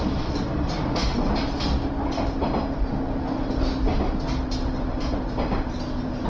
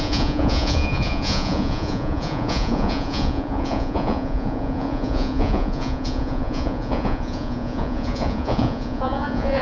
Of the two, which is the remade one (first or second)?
second